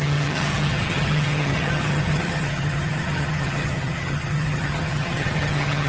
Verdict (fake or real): fake